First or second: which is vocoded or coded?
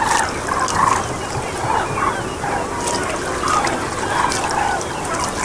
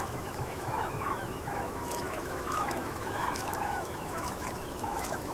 second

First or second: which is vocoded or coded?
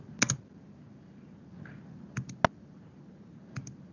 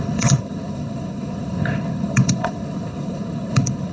second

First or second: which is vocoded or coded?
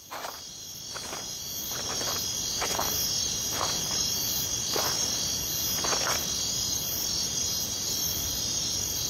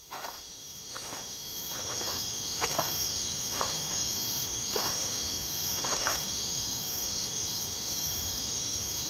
second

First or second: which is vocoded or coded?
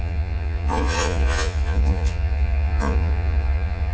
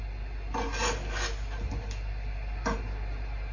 first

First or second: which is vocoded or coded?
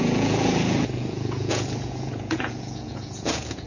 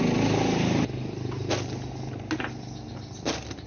first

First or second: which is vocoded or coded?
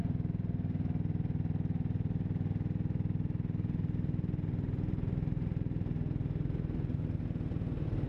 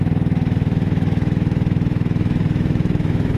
second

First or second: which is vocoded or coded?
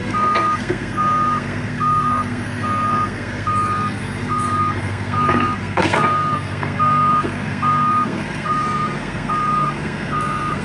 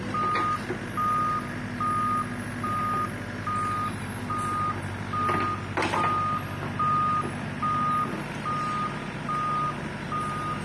first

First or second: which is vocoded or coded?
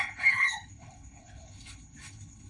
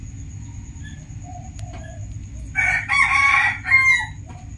first